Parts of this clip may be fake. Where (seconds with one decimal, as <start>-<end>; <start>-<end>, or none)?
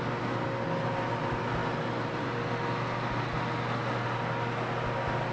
none